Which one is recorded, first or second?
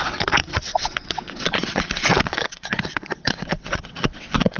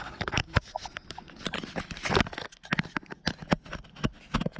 second